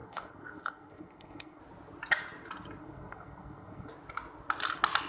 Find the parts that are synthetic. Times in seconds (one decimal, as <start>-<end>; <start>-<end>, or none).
0.0-1.6; 2.8-3.9